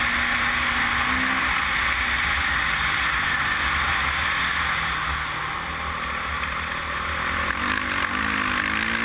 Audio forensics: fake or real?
real